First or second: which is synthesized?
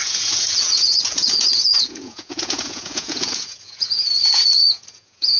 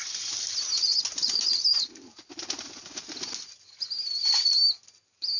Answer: first